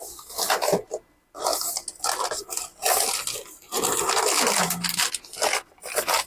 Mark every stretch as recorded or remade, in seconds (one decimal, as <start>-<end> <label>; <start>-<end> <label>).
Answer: 0.0-6.3 recorded